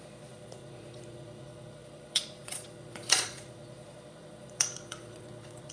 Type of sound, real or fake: fake